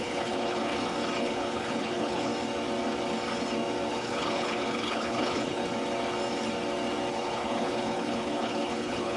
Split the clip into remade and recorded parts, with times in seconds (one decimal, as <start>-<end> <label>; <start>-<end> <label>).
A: 0.0-0.7 remade; 0.7-1.2 recorded; 1.2-2.3 remade; 2.3-3.9 recorded; 3.9-5.6 remade; 5.6-7.1 recorded; 7.1-9.2 remade

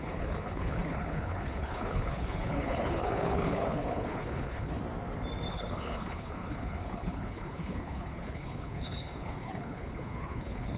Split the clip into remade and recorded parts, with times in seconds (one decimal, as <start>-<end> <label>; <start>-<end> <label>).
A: 0.0-4.8 remade; 4.8-5.5 recorded; 5.5-10.8 remade

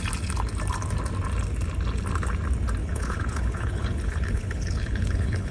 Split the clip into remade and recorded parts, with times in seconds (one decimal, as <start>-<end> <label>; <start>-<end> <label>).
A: 0.0-2.8 recorded; 2.8-5.5 remade

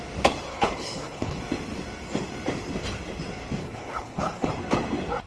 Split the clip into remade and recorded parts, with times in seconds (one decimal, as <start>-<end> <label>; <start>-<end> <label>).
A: 0.0-0.5 recorded; 0.5-1.4 remade; 1.4-3.6 recorded; 3.6-4.5 remade; 4.5-5.3 recorded

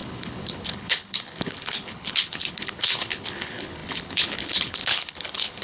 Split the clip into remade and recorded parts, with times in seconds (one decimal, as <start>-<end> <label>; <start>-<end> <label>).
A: 0.0-5.6 remade

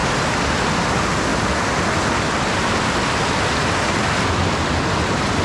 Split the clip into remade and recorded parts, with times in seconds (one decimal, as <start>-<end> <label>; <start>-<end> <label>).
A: 0.0-5.4 recorded